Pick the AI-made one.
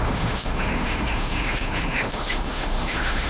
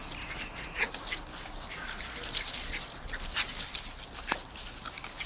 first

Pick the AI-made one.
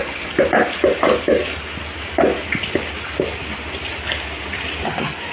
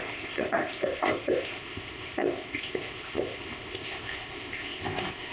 second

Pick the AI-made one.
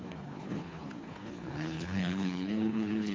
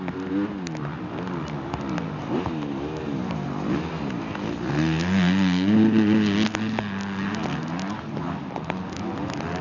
first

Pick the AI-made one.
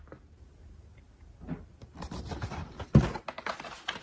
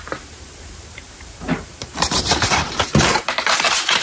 second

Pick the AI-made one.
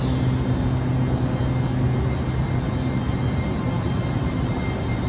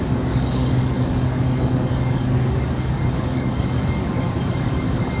second